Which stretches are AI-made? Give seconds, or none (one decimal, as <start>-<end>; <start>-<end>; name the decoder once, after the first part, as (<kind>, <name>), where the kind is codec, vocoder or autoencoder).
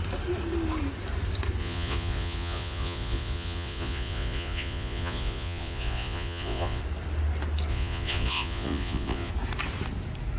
1.6-6.8 (vocoder, Vocos); 7.7-9.3